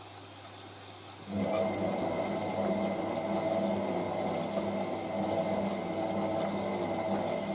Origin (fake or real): real